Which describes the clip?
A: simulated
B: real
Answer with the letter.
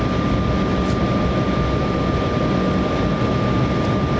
B